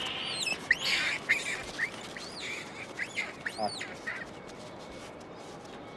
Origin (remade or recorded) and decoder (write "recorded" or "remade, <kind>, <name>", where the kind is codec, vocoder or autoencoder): recorded